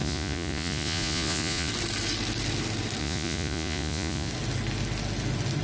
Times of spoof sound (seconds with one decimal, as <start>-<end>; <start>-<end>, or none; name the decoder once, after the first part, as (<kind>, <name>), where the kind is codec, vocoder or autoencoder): 0.0-1.7 (vocoder, Vocos); 3.0-4.3